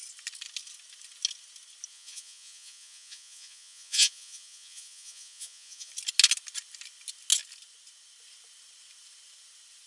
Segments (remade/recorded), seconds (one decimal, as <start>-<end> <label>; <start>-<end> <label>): 0.0-1.9 recorded; 1.9-5.9 remade; 5.9-9.9 recorded